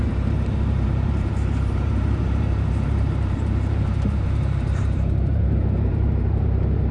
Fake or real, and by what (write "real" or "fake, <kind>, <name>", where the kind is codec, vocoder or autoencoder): fake, vocoder, BigVGAN v2